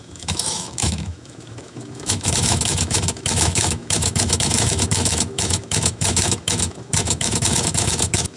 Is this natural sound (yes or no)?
no